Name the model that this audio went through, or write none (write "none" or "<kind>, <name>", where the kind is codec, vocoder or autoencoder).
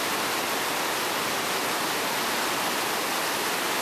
none